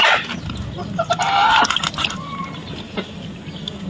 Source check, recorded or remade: recorded